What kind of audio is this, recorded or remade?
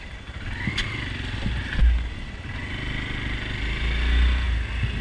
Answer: recorded